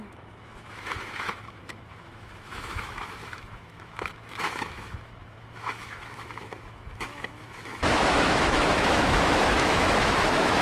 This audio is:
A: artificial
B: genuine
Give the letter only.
A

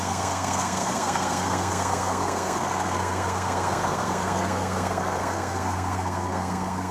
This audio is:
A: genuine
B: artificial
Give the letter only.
B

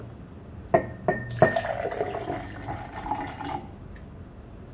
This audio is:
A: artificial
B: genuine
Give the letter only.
B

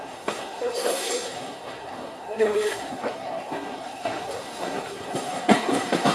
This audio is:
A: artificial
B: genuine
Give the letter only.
A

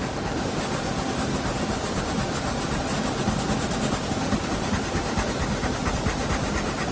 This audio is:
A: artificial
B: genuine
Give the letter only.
B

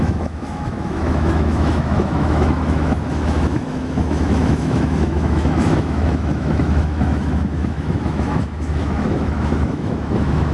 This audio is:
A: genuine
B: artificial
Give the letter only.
B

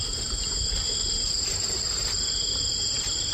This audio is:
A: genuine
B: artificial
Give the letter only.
A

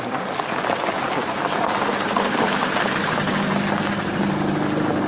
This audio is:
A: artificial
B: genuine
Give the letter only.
B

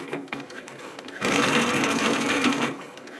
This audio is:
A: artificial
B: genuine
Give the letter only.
A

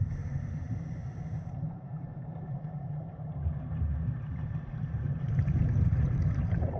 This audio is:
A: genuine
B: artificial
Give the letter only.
B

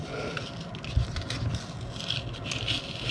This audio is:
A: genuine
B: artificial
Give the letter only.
A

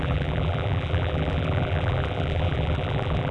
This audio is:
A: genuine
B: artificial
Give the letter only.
B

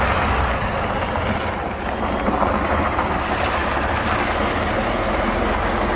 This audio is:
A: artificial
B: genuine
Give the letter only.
B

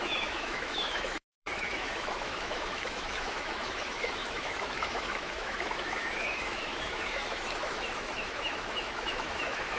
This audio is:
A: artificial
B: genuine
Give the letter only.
A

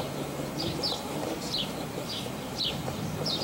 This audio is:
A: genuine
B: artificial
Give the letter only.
B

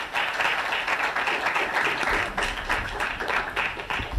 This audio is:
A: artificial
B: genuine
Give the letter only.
B